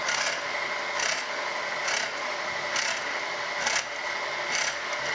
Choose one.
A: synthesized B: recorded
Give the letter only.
B